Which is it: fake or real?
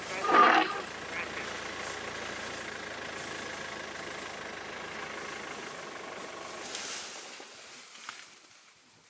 real